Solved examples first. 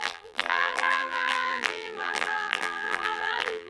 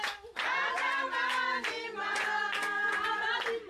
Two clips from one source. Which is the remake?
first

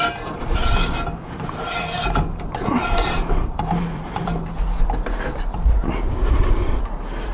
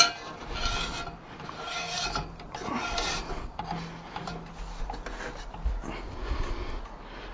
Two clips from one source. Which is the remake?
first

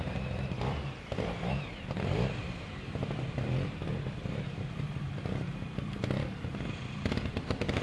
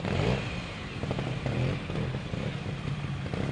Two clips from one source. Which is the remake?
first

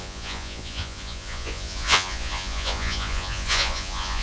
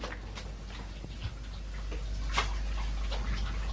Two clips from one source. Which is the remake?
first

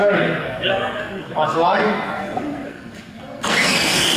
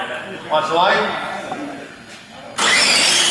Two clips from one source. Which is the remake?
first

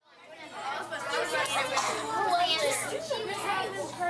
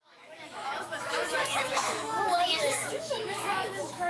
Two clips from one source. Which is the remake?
second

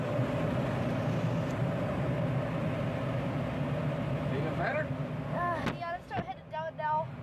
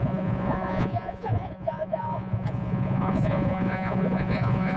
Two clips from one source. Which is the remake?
second